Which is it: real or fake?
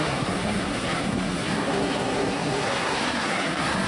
fake